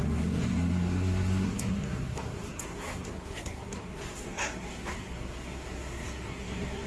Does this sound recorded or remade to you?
remade